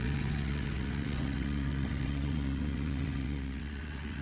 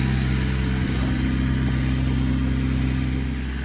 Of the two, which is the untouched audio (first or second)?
second